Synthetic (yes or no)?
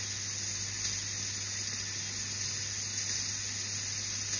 no